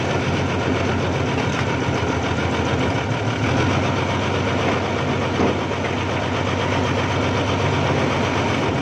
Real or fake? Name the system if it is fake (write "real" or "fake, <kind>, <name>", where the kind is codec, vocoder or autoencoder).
real